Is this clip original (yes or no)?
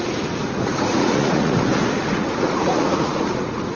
no